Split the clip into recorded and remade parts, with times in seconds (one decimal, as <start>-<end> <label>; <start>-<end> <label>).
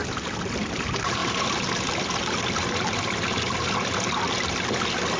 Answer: 0.0-5.2 recorded